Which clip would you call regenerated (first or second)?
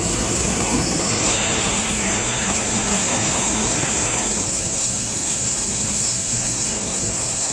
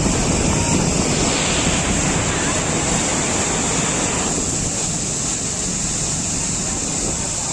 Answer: first